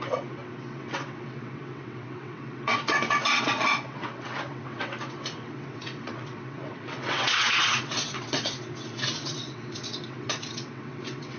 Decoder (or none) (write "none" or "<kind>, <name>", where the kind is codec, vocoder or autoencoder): vocoder, WaveNeXt